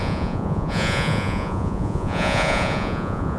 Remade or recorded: remade